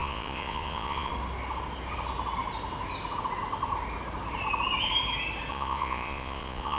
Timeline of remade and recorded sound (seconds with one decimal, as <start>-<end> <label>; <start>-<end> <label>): 0.0-1.1 remade; 1.1-5.5 recorded; 5.5-6.8 remade